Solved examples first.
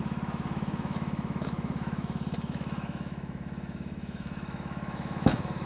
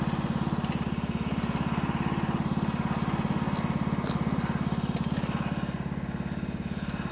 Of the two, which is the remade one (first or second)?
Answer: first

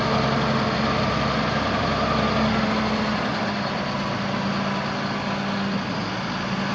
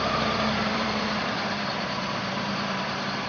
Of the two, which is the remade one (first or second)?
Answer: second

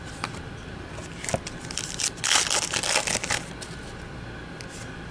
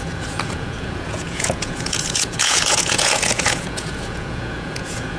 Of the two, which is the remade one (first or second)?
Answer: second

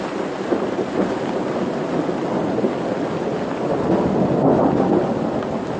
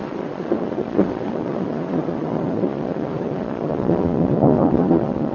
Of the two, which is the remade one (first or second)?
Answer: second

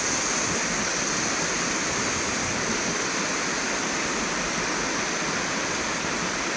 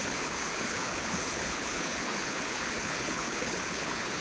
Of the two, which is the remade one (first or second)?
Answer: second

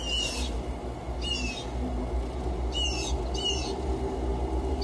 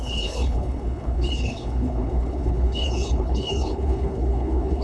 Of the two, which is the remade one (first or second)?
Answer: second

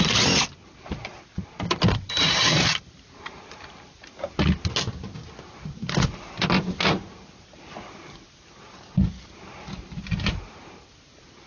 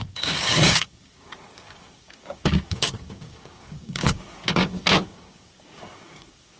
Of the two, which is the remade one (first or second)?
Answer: second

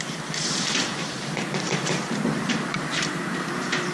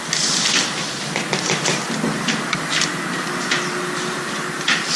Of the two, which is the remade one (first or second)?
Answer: first